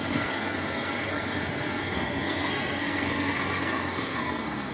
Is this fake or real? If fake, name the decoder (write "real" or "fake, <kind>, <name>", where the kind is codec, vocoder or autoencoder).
fake, codec, SNAC